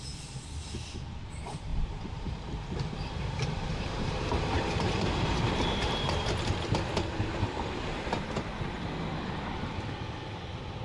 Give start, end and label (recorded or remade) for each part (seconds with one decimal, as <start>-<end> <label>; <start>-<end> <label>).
0.0-1.7 recorded; 1.7-6.3 remade; 6.3-10.8 recorded